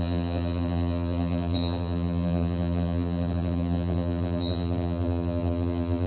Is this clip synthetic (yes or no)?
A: yes